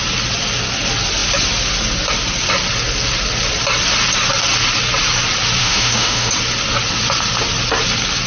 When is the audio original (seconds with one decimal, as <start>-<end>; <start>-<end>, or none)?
0.0-5.6; 6.3-8.3